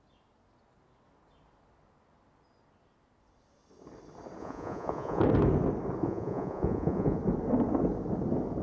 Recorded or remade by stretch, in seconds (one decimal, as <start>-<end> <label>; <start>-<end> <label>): 0.0-4.4 recorded; 4.4-5.2 remade; 5.2-6.0 recorded; 6.0-7.2 remade; 7.2-8.6 recorded